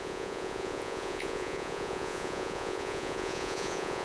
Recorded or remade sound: remade